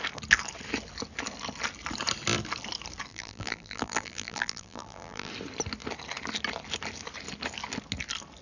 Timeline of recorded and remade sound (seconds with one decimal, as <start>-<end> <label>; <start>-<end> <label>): 0.0-3.1 recorded; 3.1-5.3 remade; 5.3-8.4 recorded